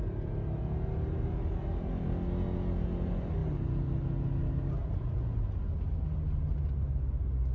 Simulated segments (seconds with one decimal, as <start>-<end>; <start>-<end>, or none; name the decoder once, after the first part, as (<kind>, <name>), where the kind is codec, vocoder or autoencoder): none